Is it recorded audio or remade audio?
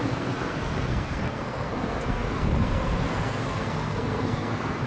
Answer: remade